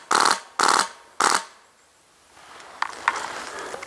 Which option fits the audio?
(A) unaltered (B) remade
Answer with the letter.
A